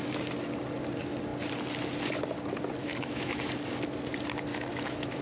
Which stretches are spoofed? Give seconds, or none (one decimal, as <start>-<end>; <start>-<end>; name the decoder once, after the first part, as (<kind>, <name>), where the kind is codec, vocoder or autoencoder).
2.8-3.4 (autoencoder, DAC-VAE); 4.5-5.2

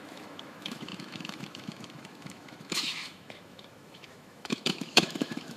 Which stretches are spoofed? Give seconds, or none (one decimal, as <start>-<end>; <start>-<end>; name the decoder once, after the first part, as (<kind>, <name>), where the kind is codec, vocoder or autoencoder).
0.0-5.6 (autoencoder, DAC-VAE)

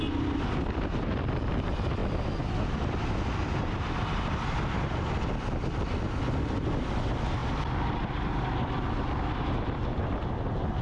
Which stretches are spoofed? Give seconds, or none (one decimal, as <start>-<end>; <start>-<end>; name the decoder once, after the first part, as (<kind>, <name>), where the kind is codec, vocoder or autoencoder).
none

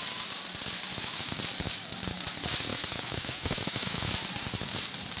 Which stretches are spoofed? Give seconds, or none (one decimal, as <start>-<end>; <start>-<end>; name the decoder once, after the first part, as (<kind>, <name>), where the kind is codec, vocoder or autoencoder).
0.9-1.4 (autoencoder, DAC-VAE); 2.7-4.1

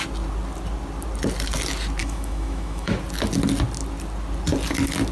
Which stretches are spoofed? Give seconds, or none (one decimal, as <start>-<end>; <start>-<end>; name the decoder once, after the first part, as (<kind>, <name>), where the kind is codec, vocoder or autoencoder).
2.0-2.9 (autoencoder, DAC-VAE)

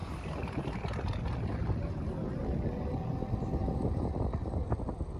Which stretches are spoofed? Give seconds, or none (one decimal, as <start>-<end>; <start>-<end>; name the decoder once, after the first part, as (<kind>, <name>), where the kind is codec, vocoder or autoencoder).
none

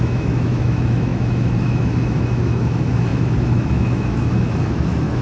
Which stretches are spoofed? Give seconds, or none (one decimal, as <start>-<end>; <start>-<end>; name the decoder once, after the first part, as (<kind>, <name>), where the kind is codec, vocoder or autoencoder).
0.0-5.2 (autoencoder, DAC-VAE)

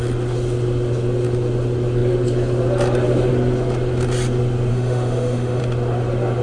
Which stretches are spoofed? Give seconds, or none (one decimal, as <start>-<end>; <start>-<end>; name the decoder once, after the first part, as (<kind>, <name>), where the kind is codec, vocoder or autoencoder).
4.7-5.6 (autoencoder, DAC-VAE)